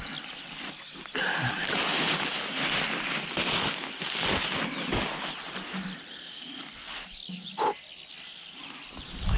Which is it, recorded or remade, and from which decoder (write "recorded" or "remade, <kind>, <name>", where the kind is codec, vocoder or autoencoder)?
recorded